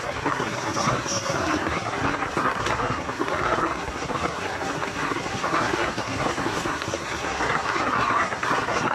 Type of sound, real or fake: fake